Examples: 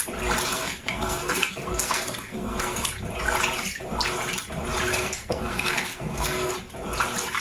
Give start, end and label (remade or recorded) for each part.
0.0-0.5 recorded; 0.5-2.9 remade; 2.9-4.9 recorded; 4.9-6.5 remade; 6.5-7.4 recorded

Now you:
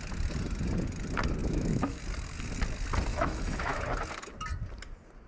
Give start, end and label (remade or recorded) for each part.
0.0-1.4 recorded; 1.4-2.0 remade; 2.0-3.1 recorded; 3.1-3.8 remade; 3.8-5.3 recorded

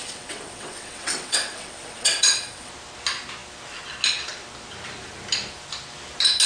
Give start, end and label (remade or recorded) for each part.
0.0-2.7 remade; 2.7-6.5 recorded